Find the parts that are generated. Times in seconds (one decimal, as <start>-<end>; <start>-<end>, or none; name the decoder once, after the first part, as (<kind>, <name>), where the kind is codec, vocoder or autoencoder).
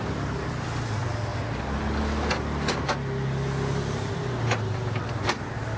none